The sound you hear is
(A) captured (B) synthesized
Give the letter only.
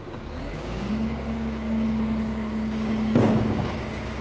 B